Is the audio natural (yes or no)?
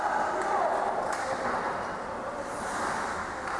yes